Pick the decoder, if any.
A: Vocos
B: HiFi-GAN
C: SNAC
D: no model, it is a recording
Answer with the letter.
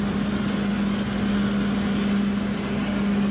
D